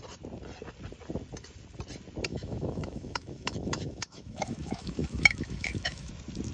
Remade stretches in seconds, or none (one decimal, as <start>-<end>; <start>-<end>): 2.3-6.1